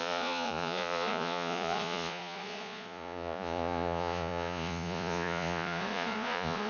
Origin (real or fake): fake